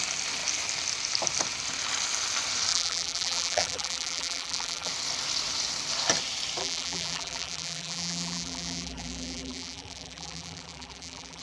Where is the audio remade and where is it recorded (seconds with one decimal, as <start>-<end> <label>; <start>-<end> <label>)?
0.0-2.7 recorded; 2.7-4.9 remade; 4.9-6.6 recorded; 6.6-11.4 remade